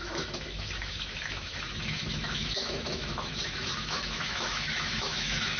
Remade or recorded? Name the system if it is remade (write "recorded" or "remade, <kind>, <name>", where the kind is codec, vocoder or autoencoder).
remade, autoencoder, DAC-VAE